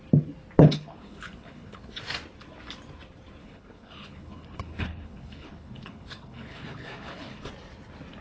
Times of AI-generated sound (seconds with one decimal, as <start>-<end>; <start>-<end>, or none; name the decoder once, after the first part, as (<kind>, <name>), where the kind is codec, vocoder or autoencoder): 0.6-2.0 (codec, HILCodec); 3.4-7.5

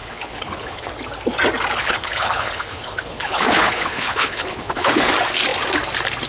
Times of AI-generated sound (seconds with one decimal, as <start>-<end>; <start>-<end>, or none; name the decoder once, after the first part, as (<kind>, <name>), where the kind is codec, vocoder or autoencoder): 0.0-0.9 (codec, HILCodec); 1.8-5.1